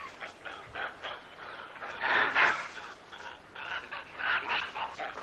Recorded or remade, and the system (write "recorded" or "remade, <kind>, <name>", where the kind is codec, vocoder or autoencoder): recorded